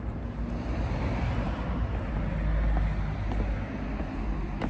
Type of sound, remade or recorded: recorded